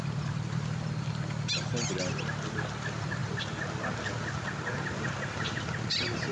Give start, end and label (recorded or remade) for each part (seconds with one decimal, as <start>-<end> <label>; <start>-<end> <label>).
0.0-6.3 recorded